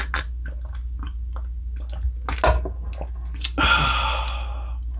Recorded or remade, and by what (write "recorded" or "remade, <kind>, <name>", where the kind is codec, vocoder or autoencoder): recorded